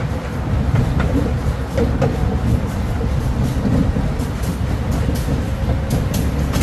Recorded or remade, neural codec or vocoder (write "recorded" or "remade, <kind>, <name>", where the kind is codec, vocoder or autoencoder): recorded